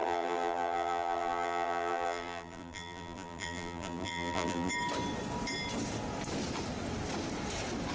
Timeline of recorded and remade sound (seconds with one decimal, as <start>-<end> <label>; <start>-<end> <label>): 0.0-4.7 remade; 4.7-7.9 recorded